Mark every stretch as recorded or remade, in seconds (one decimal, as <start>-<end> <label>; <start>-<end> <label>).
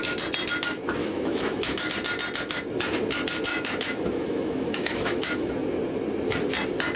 0.0-1.0 recorded; 1.0-1.9 remade; 1.9-3.5 recorded; 3.5-5.5 remade; 5.5-7.0 recorded